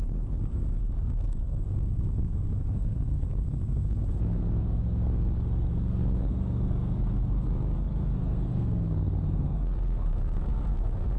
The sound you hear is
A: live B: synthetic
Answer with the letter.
B